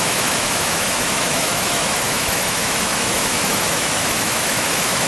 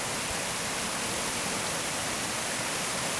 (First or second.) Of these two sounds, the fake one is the first